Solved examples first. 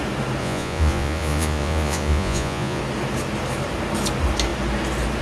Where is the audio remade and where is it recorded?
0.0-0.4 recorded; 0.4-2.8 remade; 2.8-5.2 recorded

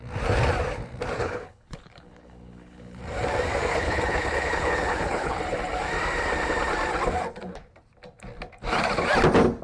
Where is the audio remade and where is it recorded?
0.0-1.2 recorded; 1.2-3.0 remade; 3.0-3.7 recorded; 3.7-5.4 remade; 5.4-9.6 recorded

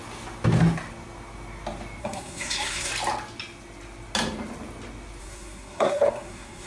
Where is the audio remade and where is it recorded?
0.0-2.0 recorded; 2.0-2.9 remade; 2.9-5.2 recorded; 5.2-6.7 remade